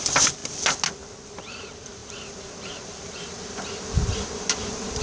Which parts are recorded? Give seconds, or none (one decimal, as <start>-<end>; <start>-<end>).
0.0-5.0